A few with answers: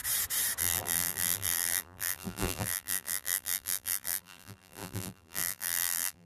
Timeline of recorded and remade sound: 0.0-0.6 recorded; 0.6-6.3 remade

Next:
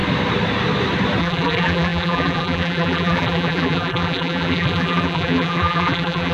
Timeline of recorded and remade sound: 0.0-1.2 recorded; 1.2-6.3 remade

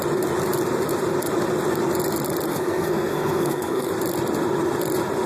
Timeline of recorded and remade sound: 0.0-2.5 recorded; 2.5-3.9 remade; 3.9-5.3 recorded

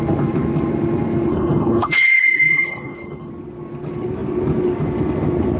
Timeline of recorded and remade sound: 0.0-1.3 recorded; 1.3-3.3 remade; 3.3-5.6 recorded

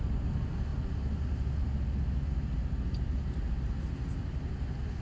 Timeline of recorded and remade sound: 0.0-5.0 recorded

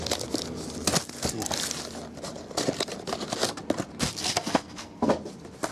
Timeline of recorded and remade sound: 0.0-4.2 recorded; 4.2-5.1 remade; 5.1-5.7 recorded

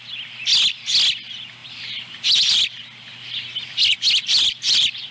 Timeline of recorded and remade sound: 0.0-1.6 recorded; 1.6-5.1 remade